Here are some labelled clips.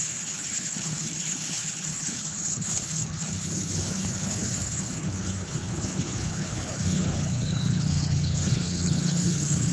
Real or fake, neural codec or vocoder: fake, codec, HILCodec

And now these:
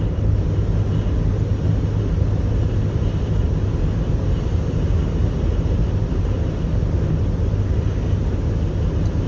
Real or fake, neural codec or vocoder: real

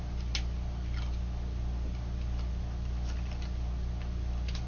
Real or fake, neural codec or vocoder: real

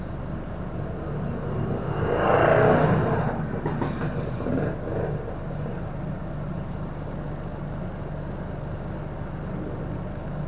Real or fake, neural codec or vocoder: real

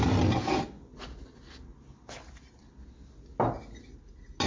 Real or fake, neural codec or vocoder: real